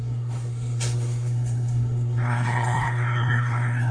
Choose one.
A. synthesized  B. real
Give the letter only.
A